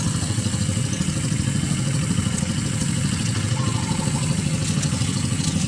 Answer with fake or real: fake